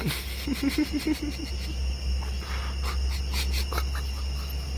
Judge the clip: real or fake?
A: real